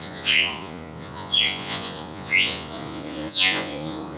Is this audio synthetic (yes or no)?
yes